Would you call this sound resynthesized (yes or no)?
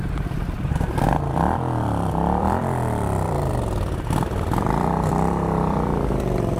yes